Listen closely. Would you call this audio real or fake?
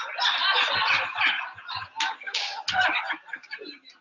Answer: real